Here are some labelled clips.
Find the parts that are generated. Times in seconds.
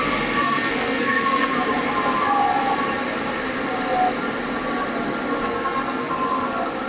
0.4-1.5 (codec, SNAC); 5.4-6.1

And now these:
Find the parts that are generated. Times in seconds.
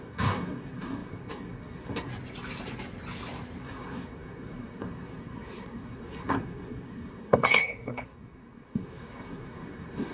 0.0-2.1 (codec, SNAC); 3.6-10.1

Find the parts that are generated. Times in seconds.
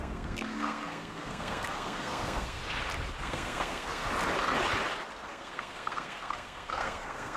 0.0-2.6 (codec, SNAC); 3.2-4.0; 5.3-7.4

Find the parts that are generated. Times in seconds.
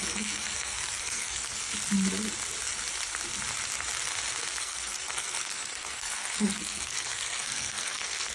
0.0-1.6 (codec, SNAC); 4.6-8.3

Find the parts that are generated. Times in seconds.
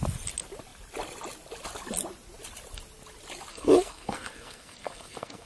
3.5-5.5 (codec, SNAC)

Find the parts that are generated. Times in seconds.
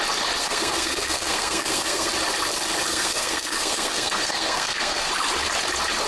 0.4-2.1 (codec, SNAC); 2.9-5.1